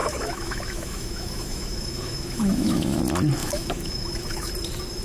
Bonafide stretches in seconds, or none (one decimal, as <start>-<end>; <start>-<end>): 3.0-3.4; 4.5-5.0